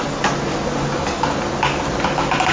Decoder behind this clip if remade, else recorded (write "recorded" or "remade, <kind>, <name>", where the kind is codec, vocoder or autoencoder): recorded